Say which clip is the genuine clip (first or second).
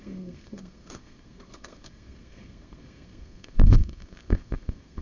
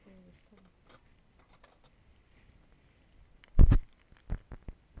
second